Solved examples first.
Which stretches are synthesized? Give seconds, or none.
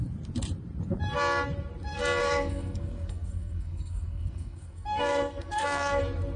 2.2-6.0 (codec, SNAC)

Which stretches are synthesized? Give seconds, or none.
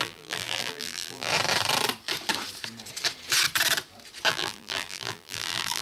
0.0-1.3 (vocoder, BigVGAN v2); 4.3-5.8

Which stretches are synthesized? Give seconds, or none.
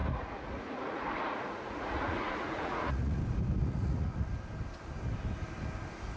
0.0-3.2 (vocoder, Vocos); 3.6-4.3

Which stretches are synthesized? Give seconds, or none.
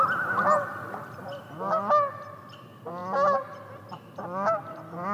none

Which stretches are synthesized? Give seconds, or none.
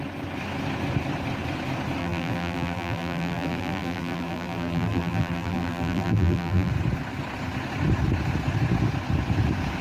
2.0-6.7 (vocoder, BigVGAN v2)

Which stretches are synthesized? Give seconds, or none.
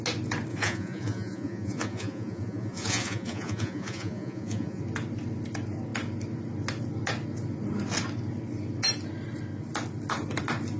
0.5-4.8 (vocoder, Vocos)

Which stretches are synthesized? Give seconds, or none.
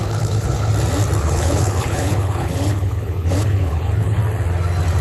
0.0-0.7 (codec, HILCodec); 1.2-4.2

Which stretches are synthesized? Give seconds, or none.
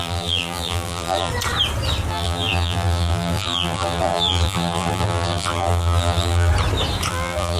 0.0-1.3 (vocoder, BigVGAN v2); 2.1-6.5; 7.1-7.6